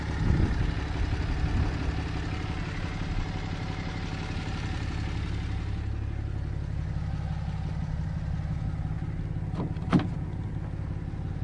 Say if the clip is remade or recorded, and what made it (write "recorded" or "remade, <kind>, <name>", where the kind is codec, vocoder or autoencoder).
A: recorded